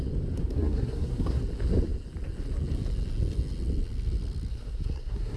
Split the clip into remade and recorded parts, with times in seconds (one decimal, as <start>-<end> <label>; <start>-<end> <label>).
0.0-0.4 recorded; 0.4-1.4 remade; 1.4-4.5 recorded; 4.5-5.4 remade